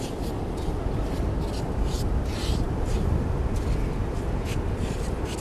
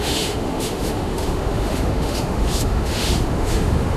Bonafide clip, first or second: first